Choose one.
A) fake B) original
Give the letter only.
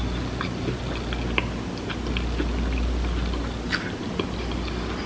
B